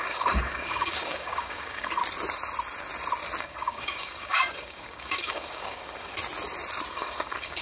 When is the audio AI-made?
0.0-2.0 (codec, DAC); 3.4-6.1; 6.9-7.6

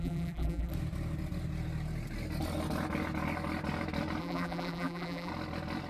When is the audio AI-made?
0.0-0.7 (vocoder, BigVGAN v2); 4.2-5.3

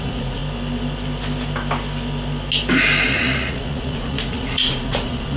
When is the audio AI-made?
0.0-0.4 (vocoder, Vocos); 3.1-5.4

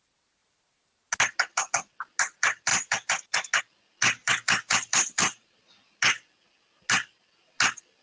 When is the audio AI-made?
4.2-5.7 (vocoder, BigVGAN v2)

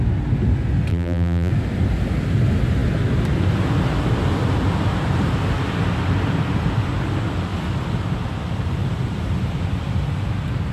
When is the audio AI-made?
0.9-1.5 (vocoder, BigVGAN v2)

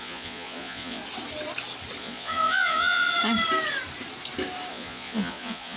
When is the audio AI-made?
0.0-1.0 (vocoder, Vocos); 2.0-3.0; 4.7-5.8